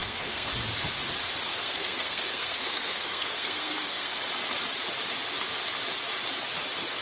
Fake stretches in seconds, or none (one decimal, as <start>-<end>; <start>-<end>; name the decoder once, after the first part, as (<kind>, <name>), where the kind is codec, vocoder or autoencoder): 0.0-0.5 (codec, SNAC); 1.5-4.2